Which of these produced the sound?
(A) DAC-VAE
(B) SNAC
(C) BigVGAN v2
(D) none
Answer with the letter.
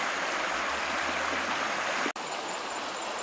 D